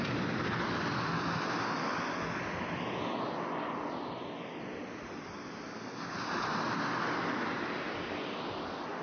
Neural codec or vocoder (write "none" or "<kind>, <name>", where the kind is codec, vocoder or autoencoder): none